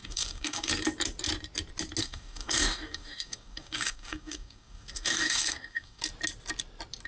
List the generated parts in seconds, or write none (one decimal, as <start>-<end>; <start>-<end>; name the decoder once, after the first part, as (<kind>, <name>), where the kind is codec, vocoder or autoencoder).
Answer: 0.0-0.7 (codec, DAC); 2.0-6.0